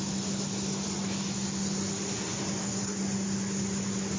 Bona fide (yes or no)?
yes